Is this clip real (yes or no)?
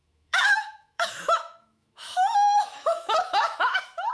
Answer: no